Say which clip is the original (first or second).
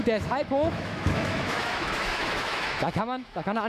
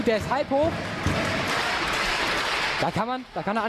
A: second